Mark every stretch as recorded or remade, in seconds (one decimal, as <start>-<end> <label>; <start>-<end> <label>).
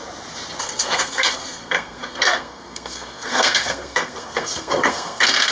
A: 0.0-0.6 recorded; 0.6-5.5 remade